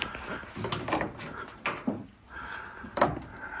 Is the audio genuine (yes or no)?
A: yes